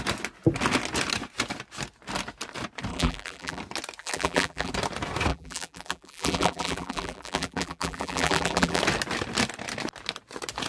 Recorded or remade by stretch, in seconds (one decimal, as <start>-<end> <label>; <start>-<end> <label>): 0.0-2.9 recorded; 2.9-3.6 remade; 3.6-4.0 recorded; 4.0-4.7 remade; 4.7-5.3 recorded; 5.3-8.8 remade; 8.8-10.7 recorded